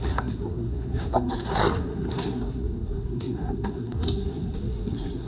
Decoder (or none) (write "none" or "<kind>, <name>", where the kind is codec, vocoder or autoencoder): codec, SNAC